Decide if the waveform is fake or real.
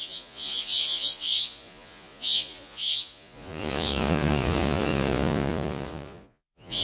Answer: fake